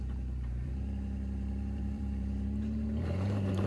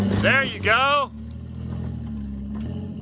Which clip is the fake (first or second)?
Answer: first